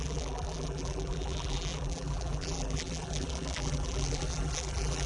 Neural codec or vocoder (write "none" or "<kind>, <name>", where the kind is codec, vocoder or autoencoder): vocoder, BigVGAN v2